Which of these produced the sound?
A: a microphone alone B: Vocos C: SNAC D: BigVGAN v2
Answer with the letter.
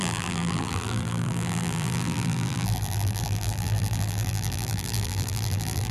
D